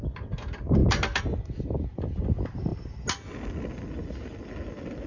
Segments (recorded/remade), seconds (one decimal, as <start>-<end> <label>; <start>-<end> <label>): 0.0-5.1 recorded